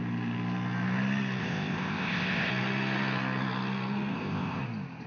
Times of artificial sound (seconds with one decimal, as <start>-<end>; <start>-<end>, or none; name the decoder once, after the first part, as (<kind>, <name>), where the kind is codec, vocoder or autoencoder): 1.4-2.5 (codec, ZipCodec); 4.1-4.6

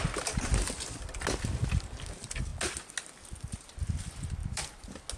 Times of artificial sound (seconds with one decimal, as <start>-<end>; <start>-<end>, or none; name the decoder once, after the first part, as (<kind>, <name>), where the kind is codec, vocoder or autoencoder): none